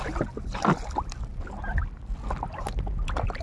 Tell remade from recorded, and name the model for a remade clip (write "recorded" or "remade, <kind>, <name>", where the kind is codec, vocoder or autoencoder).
recorded